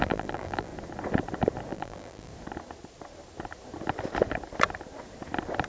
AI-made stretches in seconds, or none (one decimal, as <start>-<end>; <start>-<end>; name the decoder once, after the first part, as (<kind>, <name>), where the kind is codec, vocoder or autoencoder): 0.0-0.7 (vocoder, BigVGAN v2); 1.7-2.3